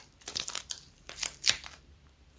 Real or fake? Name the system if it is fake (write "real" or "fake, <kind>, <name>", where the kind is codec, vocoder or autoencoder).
fake, vocoder, BigVGAN v2